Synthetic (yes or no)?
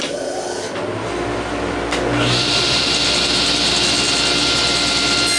no